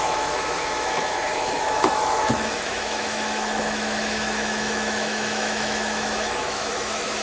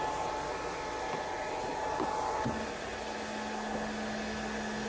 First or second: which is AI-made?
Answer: first